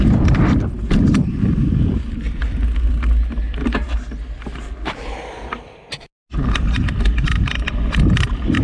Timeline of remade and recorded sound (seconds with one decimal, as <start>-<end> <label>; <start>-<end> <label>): 0.0-8.6 recorded